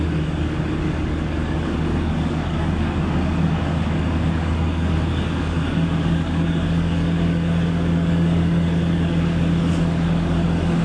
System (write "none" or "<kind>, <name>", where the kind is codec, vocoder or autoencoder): codec, DAC